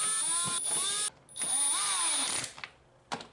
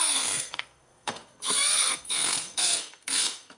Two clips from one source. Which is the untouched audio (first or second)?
first